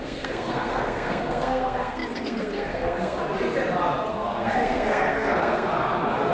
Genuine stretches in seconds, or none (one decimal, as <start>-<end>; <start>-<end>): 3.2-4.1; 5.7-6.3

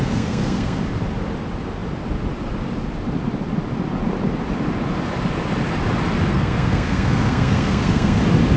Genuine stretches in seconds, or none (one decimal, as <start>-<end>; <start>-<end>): 0.8-6.3; 8.2-8.6

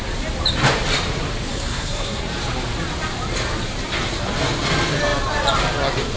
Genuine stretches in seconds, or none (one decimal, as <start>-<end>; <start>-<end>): 0.0-1.5; 2.2-6.2